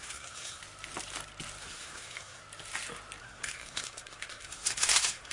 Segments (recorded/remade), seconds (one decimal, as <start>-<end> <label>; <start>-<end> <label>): 0.0-0.6 remade; 0.6-1.6 recorded; 1.6-2.4 remade; 2.4-3.2 recorded; 3.2-5.3 remade